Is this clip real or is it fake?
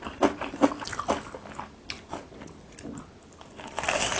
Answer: real